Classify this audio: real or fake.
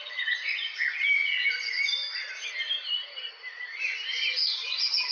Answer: real